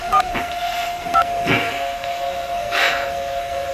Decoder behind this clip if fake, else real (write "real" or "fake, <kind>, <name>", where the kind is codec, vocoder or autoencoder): fake, codec, SNAC